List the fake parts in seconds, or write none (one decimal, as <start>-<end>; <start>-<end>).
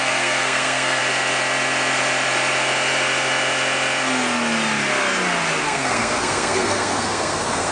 0.0-1.0; 5.6-7.7